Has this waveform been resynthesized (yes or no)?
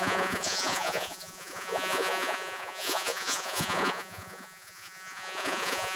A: yes